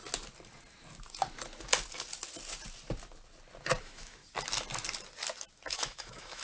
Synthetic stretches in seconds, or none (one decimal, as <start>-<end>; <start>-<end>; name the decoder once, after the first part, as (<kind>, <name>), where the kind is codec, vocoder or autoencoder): 3.8-4.2 (autoencoder, DAC-VAE); 5.7-6.4